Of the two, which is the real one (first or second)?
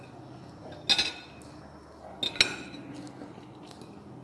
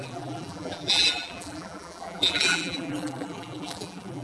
first